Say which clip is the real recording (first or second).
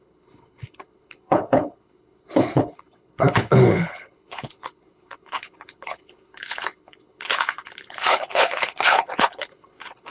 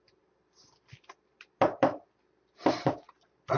second